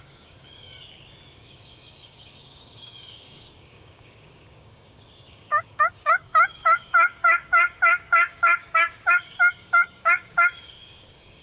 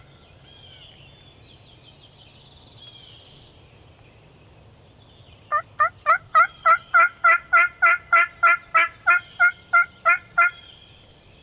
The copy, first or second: first